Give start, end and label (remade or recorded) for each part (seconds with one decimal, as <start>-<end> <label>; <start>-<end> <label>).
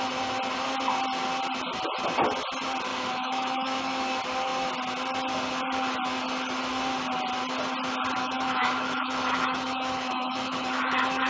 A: 0.0-2.9 recorded; 2.9-4.0 remade; 4.0-8.2 recorded; 8.2-11.3 remade